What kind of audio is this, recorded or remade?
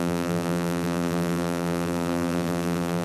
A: remade